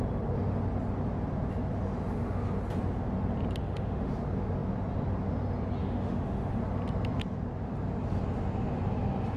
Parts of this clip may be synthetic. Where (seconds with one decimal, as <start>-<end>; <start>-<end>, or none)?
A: 3.6-4.1; 5.8-6.6